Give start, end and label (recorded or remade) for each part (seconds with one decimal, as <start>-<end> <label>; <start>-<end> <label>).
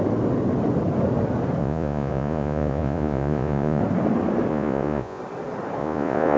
0.0-1.6 recorded; 1.6-3.8 remade; 3.8-4.5 recorded; 4.5-5.2 remade; 5.2-5.8 recorded; 5.8-6.4 remade